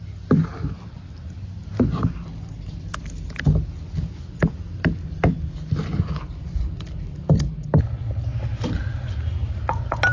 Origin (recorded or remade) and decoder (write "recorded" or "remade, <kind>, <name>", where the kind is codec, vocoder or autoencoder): recorded